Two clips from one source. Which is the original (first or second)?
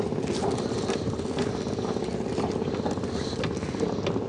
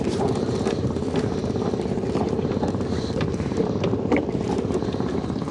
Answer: first